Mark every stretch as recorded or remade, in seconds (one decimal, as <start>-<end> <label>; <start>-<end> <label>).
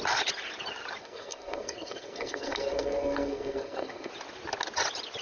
0.0-1.0 recorded; 1.0-4.1 remade; 4.1-5.2 recorded